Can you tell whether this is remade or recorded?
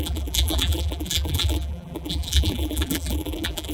remade